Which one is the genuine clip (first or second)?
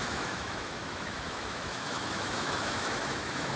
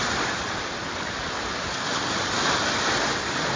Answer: second